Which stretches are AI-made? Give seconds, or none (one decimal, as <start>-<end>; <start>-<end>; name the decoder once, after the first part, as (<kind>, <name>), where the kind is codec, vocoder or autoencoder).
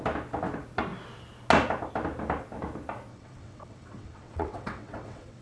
3.1-5.4 (vocoder, WaveNeXt)